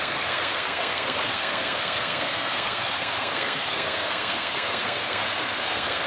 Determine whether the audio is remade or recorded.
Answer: remade